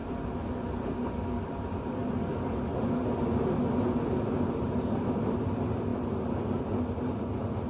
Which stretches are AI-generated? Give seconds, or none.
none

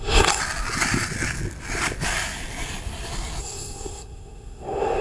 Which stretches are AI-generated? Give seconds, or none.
0.0-0.4 (codec, SNAC); 3.4-5.0

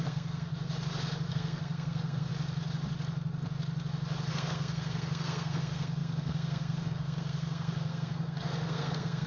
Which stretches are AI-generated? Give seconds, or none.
0.0-0.5 (codec, SNAC); 1.3-2.3; 4.3-9.3

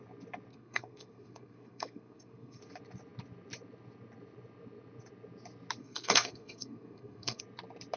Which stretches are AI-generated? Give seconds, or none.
0.5-2.6 (codec, SNAC); 5.8-7.4